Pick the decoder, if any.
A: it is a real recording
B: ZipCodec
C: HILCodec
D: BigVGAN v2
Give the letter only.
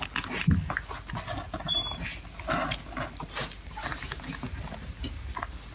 A